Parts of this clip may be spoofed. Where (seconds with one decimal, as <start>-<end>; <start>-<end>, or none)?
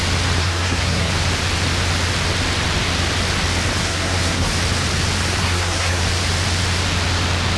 0.4-1.1; 3.8-4.5; 5.4-6.0